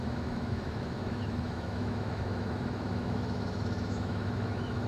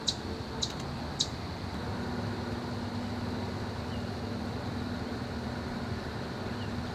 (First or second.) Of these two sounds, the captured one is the second